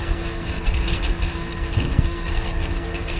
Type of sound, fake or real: fake